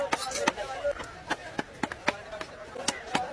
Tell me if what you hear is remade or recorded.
recorded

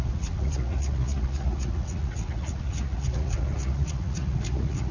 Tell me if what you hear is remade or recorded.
remade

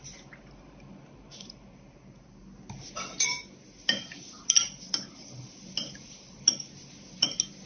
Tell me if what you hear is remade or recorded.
recorded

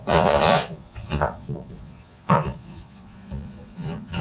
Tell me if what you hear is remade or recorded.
remade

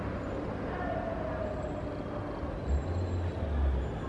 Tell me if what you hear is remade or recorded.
recorded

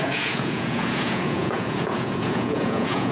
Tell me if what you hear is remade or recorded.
remade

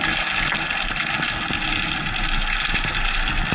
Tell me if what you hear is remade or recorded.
recorded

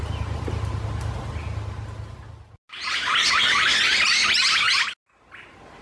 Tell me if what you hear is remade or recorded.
recorded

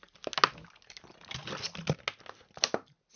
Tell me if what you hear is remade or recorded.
recorded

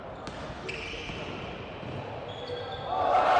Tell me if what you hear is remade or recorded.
recorded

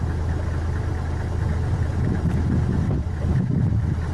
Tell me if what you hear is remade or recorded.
recorded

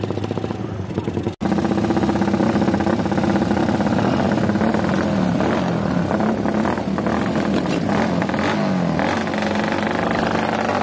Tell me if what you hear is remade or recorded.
recorded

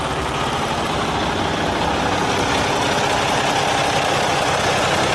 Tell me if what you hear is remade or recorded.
recorded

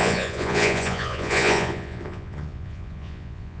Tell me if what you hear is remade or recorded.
remade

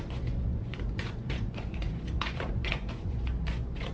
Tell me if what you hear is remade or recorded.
remade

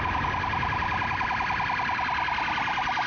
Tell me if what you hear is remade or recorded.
recorded